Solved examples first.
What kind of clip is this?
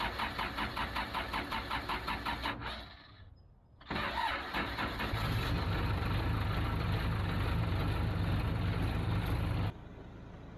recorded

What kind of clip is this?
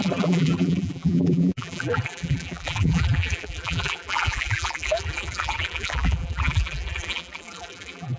remade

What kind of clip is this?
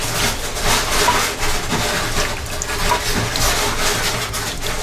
recorded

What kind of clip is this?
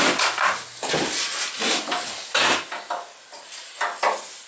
recorded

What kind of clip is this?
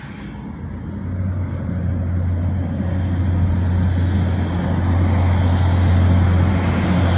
recorded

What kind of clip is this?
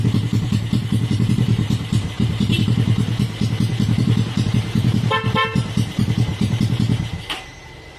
remade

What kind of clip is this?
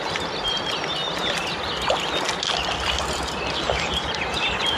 recorded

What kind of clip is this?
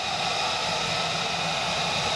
recorded